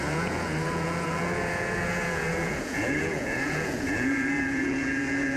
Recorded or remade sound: remade